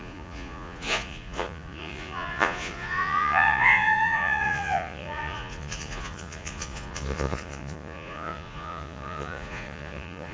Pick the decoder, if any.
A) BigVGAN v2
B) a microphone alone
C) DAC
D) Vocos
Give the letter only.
D